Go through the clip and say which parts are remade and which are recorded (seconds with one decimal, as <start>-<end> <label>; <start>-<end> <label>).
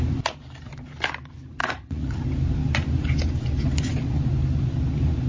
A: 0.0-1.6 recorded; 1.6-2.2 remade; 2.2-5.3 recorded